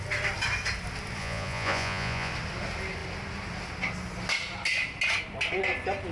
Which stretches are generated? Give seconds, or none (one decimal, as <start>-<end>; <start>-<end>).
1.2-2.3